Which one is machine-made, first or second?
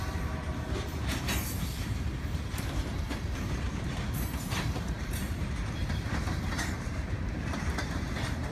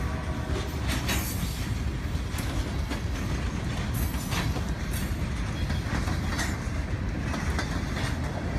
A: first